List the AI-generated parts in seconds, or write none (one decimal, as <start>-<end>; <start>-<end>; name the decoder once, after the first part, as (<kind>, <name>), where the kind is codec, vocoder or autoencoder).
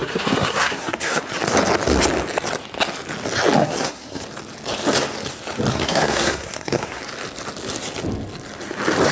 0.0-1.2 (codec, SNAC); 3.6-4.2; 5.7-7.0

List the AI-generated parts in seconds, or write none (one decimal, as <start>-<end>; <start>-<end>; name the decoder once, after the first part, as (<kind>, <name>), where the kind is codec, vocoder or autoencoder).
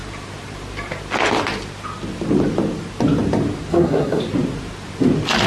3.7-4.2 (codec, SNAC)